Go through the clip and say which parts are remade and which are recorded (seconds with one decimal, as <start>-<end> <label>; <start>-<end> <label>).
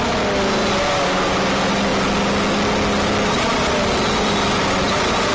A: 0.0-5.3 recorded